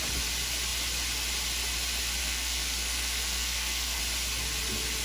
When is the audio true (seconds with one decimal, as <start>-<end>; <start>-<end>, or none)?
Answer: 0.0-2.2; 4.0-5.0